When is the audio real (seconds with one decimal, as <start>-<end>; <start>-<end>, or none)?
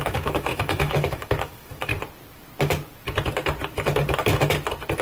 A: 1.9-5.0